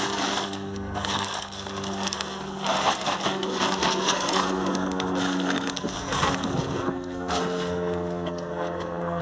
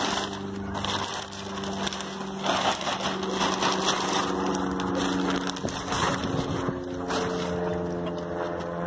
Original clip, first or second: second